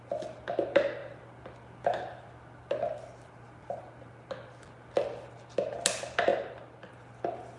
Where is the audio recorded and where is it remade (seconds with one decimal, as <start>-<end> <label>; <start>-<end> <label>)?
0.0-7.6 recorded